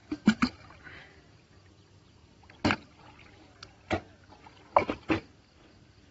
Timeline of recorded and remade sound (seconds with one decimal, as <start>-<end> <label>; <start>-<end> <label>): 0.0-6.1 recorded

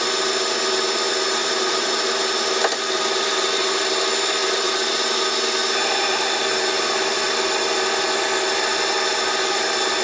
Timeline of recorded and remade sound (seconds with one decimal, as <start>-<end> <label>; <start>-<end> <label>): 0.0-1.4 recorded; 1.4-2.2 remade; 2.2-4.4 recorded; 4.4-4.9 remade; 4.9-10.0 recorded

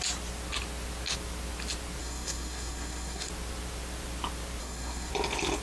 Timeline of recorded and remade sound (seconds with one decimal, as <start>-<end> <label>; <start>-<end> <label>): 0.0-2.0 recorded; 2.0-3.3 remade; 3.3-4.6 recorded; 4.6-5.1 remade; 5.1-5.6 recorded

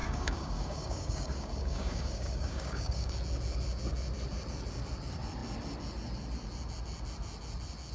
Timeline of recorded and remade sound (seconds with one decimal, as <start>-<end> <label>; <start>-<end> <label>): 0.0-3.1 remade; 3.1-7.9 recorded

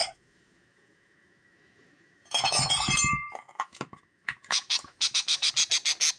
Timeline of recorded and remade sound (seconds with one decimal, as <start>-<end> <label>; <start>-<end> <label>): 0.0-2.7 remade; 2.7-3.1 recorded; 3.1-5.5 remade; 5.5-6.2 recorded

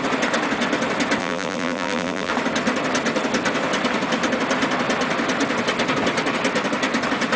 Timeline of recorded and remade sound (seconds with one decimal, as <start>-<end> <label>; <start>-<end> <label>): 0.0-1.2 recorded; 1.2-2.3 remade; 2.3-7.4 recorded

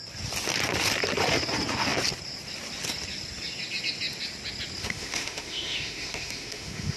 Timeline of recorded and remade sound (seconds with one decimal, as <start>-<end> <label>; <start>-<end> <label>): 0.0-4.8 recorded; 4.8-7.0 remade

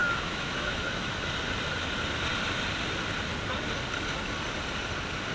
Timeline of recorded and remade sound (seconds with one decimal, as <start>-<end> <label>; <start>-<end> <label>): 0.0-1.2 remade; 1.2-5.3 recorded